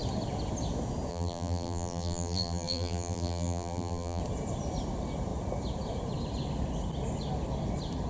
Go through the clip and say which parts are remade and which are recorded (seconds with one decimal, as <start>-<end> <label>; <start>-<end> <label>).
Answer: 0.0-1.1 recorded; 1.1-4.2 remade; 4.2-8.1 recorded